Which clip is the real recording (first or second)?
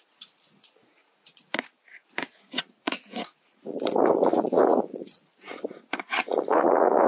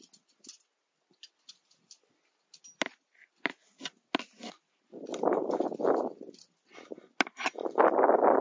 second